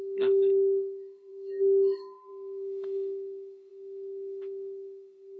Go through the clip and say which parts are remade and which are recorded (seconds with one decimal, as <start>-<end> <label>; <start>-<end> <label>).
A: 0.0-5.4 remade